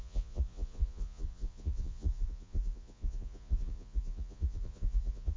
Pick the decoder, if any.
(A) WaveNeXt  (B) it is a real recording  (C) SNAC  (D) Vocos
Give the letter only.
D